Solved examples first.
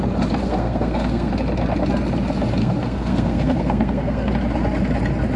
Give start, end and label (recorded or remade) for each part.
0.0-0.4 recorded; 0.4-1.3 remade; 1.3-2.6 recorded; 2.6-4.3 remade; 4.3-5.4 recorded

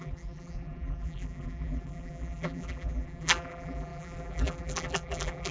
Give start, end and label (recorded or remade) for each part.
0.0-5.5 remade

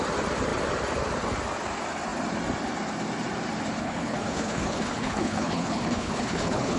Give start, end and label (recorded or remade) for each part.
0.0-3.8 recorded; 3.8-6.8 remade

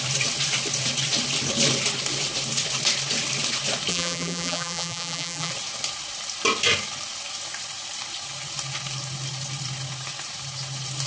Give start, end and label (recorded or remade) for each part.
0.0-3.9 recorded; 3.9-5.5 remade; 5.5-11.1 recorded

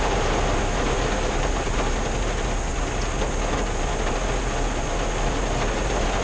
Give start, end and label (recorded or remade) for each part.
0.0-6.2 recorded